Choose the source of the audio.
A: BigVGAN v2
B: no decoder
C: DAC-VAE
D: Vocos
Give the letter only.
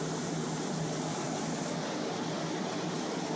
B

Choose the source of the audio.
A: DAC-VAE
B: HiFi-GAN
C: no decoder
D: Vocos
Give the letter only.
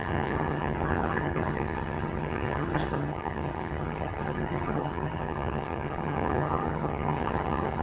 B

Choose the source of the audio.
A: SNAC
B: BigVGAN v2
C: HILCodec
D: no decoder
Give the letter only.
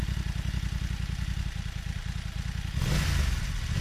D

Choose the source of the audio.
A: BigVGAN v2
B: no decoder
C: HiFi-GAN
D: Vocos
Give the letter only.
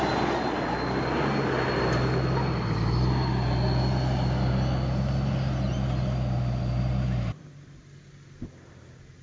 B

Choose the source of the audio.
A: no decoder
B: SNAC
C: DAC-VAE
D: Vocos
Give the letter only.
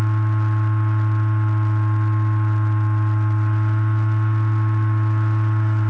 A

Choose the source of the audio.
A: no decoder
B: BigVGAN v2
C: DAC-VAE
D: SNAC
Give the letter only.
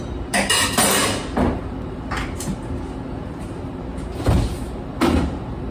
A